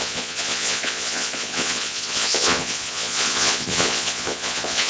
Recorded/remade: remade